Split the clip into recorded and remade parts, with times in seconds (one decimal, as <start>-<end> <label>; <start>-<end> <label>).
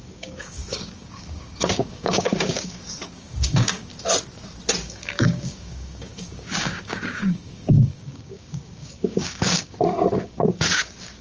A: 0.0-3.9 remade; 3.9-4.8 recorded; 4.8-11.2 remade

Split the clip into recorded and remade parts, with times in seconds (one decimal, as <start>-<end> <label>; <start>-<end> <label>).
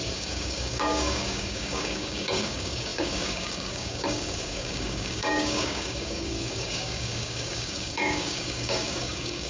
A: 0.0-9.5 remade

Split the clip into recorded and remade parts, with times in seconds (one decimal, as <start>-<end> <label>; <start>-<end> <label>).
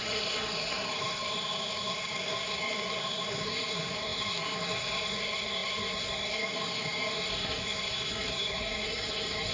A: 0.0-9.5 remade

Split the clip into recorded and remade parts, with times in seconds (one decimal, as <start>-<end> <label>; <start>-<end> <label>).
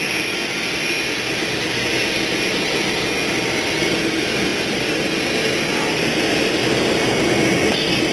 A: 0.0-8.1 recorded